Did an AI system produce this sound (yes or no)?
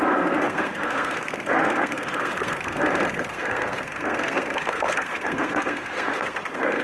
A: yes